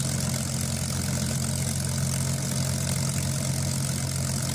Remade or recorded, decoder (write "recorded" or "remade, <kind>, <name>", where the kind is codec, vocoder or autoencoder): recorded